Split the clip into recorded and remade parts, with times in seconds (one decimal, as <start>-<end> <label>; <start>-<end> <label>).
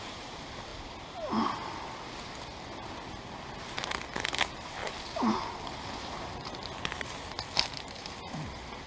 0.0-8.9 recorded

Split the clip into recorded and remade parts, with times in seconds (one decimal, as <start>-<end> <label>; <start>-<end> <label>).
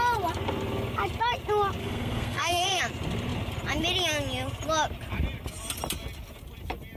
0.0-1.8 recorded; 1.8-2.8 remade; 2.8-7.0 recorded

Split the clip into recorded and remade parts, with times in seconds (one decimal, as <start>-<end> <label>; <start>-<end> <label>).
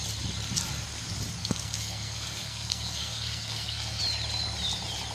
0.0-1.4 recorded; 1.4-4.0 remade; 4.0-5.1 recorded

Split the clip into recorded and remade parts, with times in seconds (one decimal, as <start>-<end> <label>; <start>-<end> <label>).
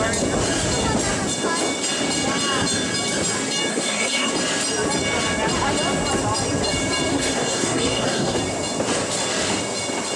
0.0-3.7 recorded; 3.7-4.3 remade; 4.3-7.1 recorded; 7.1-8.4 remade; 8.4-10.2 recorded